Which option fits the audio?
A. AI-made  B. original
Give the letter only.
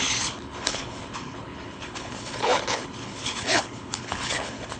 A